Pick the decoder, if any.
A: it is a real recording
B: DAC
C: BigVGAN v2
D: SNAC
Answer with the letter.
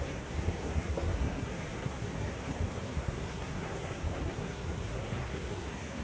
D